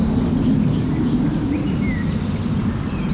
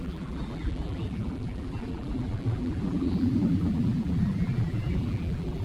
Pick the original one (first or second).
first